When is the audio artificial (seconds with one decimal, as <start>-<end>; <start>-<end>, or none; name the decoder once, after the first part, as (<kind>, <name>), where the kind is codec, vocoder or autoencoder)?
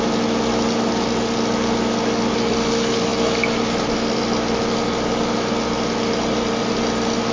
none